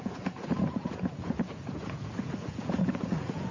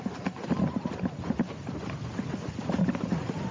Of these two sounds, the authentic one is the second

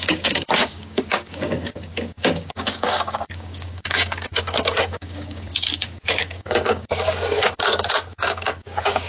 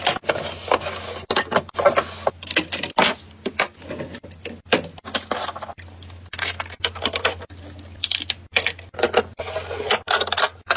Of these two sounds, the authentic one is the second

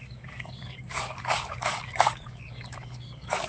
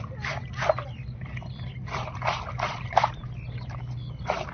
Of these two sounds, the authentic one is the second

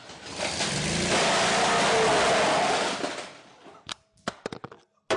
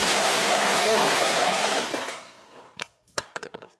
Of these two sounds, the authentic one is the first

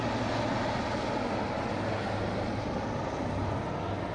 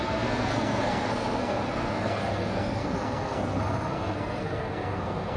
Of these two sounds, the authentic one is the first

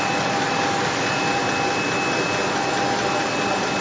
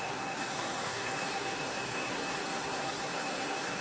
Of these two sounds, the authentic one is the first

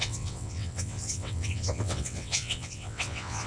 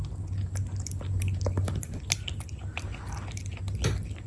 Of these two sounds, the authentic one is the second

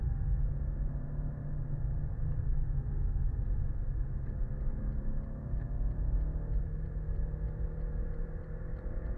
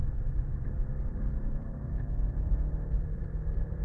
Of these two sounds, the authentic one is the first